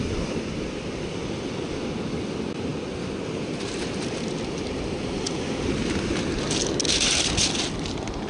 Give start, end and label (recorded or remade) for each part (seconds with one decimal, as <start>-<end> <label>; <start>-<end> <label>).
0.0-8.3 recorded